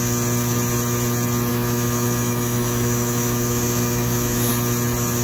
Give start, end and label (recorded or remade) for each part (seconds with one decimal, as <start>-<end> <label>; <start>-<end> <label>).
0.0-1.5 recorded; 1.5-4.5 remade; 4.5-5.2 recorded